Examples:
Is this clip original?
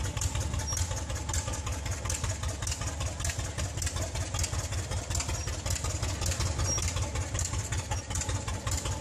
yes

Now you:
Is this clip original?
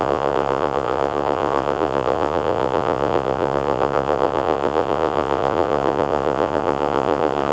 no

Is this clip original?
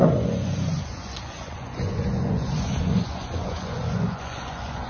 no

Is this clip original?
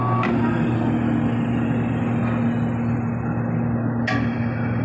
yes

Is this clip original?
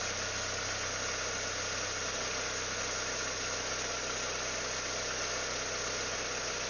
yes